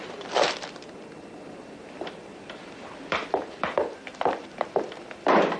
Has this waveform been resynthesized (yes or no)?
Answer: yes